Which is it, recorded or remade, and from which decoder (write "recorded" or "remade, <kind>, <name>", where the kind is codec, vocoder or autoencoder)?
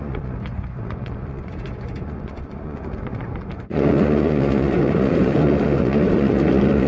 remade, vocoder, Vocos